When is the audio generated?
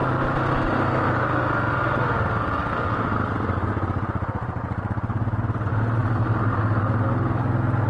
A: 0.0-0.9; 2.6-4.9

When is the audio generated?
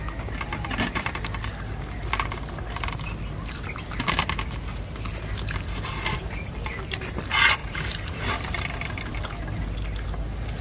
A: 7.6-8.1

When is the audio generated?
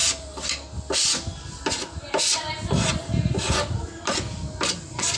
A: none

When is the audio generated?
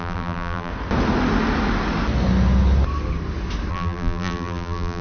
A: 0.0-0.7; 3.7-5.0